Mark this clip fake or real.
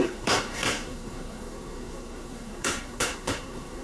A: fake